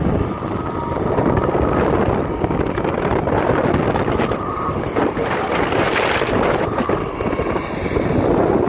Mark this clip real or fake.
real